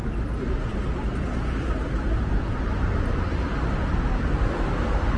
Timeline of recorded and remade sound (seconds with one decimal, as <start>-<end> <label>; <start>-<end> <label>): 0.0-5.2 recorded